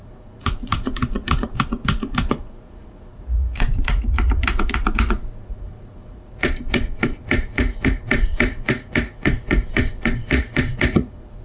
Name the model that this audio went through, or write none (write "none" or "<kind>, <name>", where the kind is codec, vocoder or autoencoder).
vocoder, Vocos